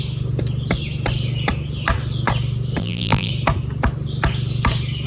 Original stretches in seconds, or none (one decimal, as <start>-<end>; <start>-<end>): 0.0-2.8; 3.3-5.1

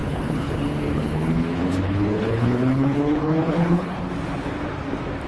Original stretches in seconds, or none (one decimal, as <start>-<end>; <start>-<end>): 0.5-0.9; 4.1-5.3

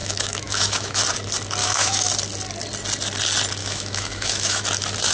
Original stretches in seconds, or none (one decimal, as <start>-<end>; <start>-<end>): 1.0-1.6; 2.1-3.6; 4.6-5.1

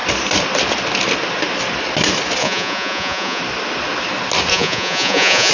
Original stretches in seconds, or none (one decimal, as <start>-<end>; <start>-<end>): 0.0-2.4; 3.4-4.5

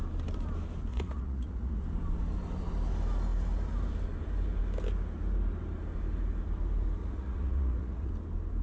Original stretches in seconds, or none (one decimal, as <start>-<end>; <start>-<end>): 0.0-0.9; 1.8-7.0; 8.1-8.6

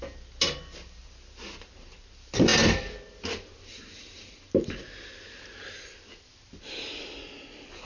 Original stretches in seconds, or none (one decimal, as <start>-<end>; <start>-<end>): 0.0-7.9

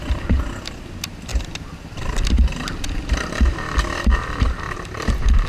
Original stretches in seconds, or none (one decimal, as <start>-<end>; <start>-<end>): 0.0-5.5

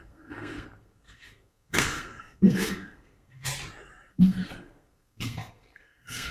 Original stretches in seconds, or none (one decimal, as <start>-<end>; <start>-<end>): 3.5-4.1